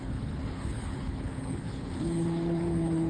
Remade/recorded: remade